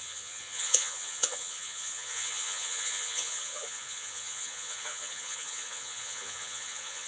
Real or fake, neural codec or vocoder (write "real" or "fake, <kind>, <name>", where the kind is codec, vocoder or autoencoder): fake, vocoder, Vocos